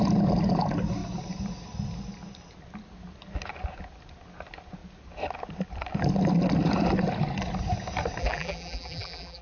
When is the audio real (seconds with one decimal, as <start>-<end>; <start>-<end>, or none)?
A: 0.0-8.2